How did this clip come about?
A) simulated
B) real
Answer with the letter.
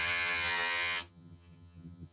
A